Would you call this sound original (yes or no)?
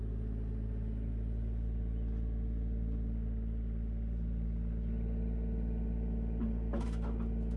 yes